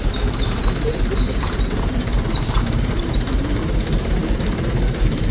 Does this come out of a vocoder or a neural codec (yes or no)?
yes